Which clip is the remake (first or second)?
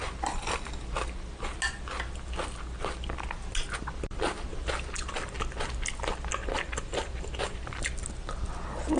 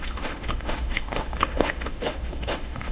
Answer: second